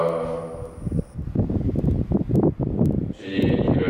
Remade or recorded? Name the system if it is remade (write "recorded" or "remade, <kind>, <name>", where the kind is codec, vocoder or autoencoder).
recorded